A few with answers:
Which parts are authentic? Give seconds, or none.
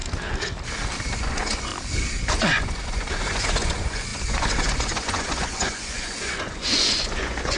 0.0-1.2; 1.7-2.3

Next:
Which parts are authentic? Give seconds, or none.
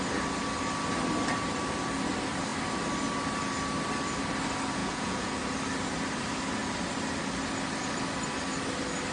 0.0-4.8; 5.4-9.1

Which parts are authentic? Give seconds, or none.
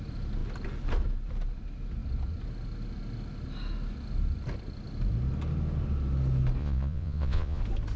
0.0-6.6; 7.6-8.0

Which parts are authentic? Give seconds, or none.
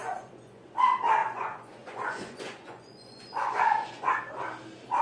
0.7-1.2; 4.2-5.0